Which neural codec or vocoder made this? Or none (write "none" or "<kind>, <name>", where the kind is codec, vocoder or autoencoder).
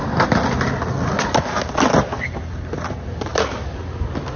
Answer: none